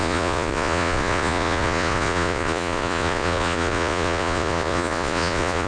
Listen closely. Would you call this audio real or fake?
fake